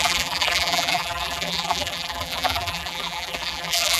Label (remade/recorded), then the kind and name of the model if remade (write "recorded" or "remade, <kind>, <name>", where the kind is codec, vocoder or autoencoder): remade, vocoder, BigVGAN v2